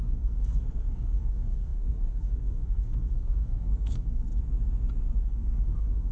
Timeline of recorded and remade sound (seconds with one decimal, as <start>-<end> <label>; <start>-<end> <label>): 0.0-4.3 remade; 4.3-5.2 recorded; 5.2-6.1 remade